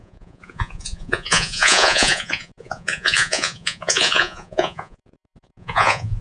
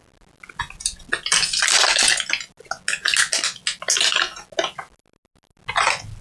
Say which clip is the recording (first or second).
second